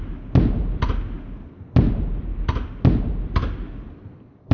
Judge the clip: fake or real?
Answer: real